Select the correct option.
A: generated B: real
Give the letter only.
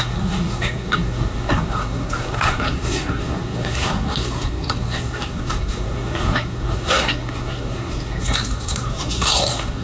A